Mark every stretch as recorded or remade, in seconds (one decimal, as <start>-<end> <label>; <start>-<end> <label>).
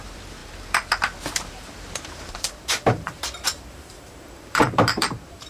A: 0.0-5.5 remade